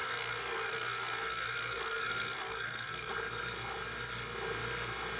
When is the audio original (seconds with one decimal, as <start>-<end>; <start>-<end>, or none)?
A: 3.1-5.2